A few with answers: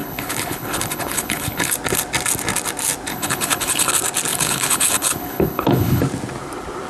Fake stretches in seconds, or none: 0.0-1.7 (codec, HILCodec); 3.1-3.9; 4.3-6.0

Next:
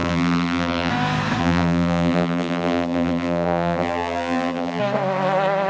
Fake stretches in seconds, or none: 0.0-0.9 (vocoder, BigVGAN v2); 1.4-4.8

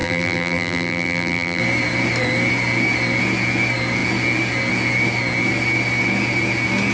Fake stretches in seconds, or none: 0.0-1.6 (vocoder, BigVGAN v2)

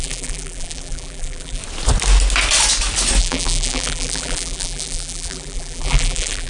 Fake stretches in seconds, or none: 0.0-1.6 (vocoder, BigVGAN v2); 3.2-6.5

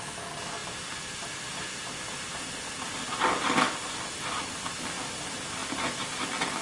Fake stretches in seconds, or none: none

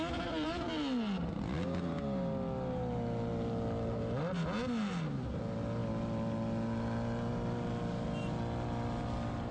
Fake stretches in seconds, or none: none

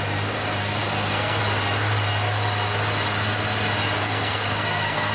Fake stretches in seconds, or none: 0.6-1.4 (codec, SNAC); 4.0-5.1

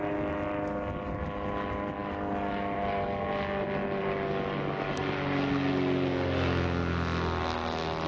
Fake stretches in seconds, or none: none